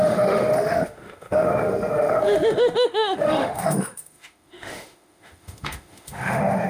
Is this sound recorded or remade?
remade